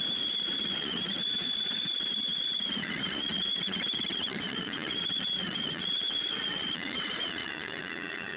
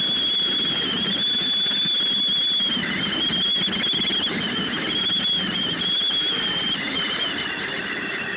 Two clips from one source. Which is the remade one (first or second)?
first